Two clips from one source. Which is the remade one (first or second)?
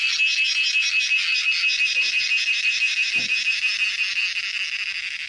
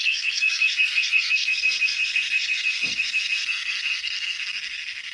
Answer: second